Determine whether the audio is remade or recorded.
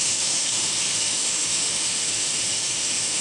remade